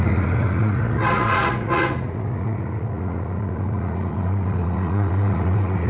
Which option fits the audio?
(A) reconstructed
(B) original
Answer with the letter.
A